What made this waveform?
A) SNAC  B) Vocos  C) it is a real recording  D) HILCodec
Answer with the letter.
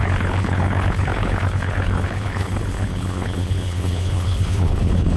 D